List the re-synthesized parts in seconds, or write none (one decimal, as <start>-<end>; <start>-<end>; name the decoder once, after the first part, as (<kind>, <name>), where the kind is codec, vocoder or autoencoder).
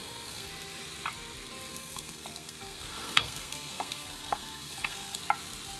0.0-0.5 (codec, SNAC); 1.7-5.2